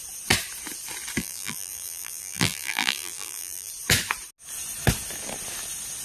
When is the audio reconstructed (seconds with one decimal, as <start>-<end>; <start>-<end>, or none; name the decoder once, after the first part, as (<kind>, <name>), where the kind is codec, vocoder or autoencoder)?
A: 1.2-3.7 (vocoder, BigVGAN v2)